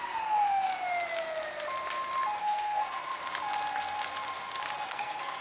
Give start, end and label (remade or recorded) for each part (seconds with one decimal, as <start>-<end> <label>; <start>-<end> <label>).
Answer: 0.0-0.7 remade; 0.7-2.4 recorded; 2.4-3.2 remade; 3.2-4.9 recorded; 4.9-5.4 remade